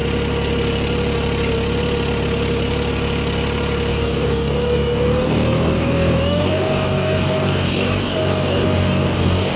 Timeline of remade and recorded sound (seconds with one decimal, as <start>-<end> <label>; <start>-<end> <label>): 0.0-3.9 recorded; 3.9-9.6 remade